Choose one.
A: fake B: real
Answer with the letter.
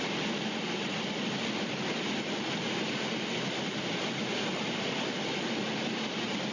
B